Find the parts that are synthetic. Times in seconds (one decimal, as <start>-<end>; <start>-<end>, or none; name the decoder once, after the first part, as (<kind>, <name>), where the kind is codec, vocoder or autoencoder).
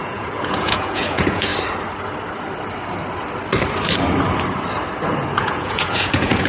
0.0-1.5 (vocoder, Vocos); 5.4-6.5